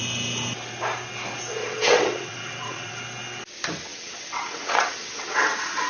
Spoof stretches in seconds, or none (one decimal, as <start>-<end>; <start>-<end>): 1.6-3.0; 3.9-5.9